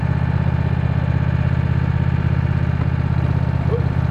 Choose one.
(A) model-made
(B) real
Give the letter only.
B